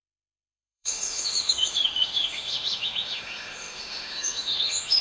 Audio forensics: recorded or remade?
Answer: remade